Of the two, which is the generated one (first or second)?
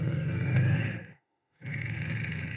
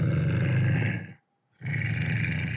first